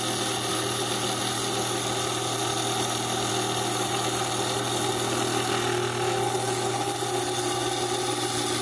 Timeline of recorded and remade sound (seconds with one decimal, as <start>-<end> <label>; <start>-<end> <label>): 0.0-8.6 recorded